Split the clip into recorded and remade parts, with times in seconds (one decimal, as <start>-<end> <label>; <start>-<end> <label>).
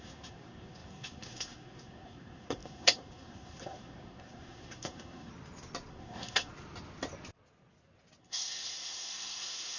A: 0.0-5.3 remade; 5.3-5.9 recorded; 5.9-6.5 remade; 6.5-8.2 recorded; 8.2-9.8 remade